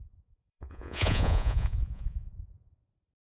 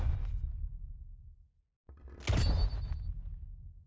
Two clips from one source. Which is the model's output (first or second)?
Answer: first